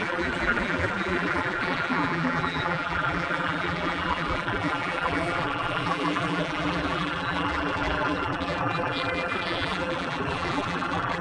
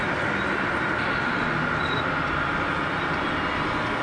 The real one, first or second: second